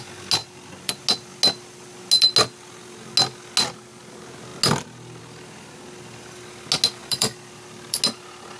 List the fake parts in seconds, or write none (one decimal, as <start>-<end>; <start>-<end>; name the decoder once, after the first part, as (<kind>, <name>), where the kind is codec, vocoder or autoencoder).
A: 0.4-0.9 (vocoder, BigVGAN v2); 7.0-8.0